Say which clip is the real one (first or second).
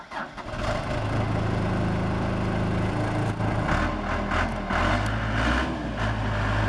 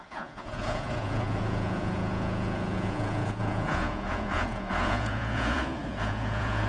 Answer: first